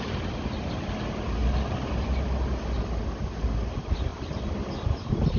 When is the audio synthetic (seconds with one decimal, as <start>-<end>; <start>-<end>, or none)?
none